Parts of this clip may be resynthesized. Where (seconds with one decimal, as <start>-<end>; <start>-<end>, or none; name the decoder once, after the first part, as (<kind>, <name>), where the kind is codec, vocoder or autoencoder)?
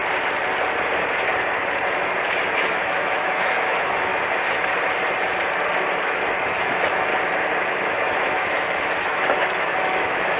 2.7-4.1 (autoencoder, DAC-VAE); 6.0-7.1; 7.7-10.4